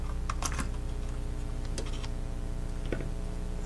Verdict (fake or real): real